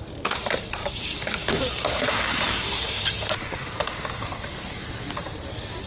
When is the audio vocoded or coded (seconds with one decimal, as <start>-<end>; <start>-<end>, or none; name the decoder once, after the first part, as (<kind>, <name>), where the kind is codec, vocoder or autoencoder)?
0.8-4.3 (codec, DAC)